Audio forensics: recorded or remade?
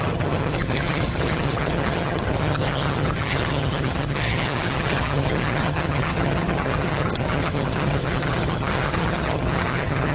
remade